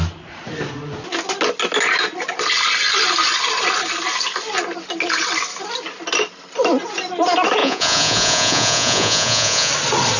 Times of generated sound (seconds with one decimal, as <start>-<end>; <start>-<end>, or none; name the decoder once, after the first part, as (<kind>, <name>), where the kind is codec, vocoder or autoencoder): 7.6-9.7 (vocoder, Vocos)